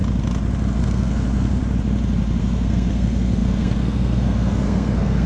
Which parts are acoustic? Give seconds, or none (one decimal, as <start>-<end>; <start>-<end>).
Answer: 0.0-0.8; 1.6-2.4